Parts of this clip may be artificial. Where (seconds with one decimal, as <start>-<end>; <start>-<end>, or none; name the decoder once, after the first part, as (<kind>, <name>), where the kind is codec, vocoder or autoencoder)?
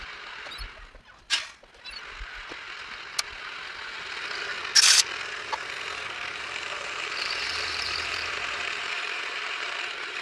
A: 6.3-10.2 (vocoder, BigVGAN v2)